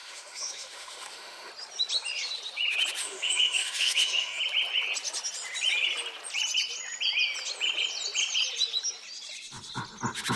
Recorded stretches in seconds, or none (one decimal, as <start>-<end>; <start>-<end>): 1.5-3.0; 4.4-10.4